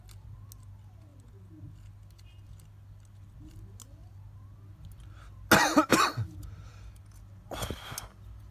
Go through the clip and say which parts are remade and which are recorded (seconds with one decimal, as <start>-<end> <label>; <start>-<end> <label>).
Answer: 0.0-8.5 recorded